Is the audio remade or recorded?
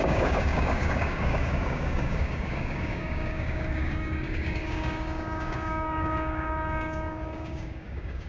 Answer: remade